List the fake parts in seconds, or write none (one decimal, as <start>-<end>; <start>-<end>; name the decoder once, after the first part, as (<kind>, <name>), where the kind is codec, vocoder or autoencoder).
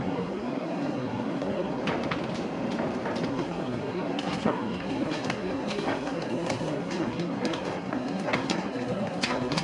0.0-1.8 (codec, SNAC); 3.3-9.6